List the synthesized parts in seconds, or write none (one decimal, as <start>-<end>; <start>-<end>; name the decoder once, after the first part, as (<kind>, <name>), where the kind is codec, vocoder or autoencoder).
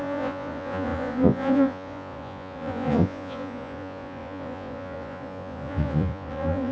0.0-6.7 (vocoder, Vocos)